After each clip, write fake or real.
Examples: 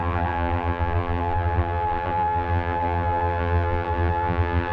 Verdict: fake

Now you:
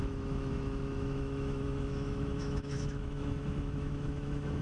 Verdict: fake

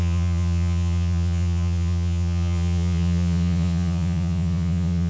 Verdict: fake